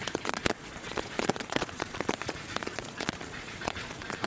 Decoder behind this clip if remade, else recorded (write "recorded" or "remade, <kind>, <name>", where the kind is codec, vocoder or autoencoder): remade, vocoder, Vocos